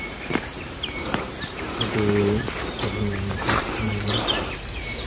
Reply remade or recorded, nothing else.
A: remade